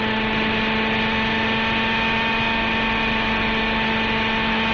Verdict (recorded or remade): recorded